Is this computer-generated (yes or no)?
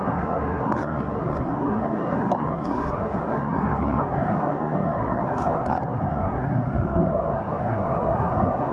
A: yes